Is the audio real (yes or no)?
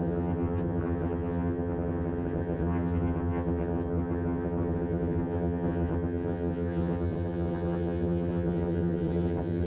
no